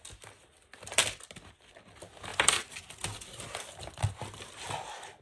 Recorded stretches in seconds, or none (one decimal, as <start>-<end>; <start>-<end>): 0.0-5.2